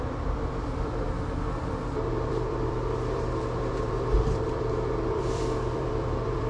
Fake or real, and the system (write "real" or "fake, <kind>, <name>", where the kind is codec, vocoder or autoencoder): fake, vocoder, BigVGAN v2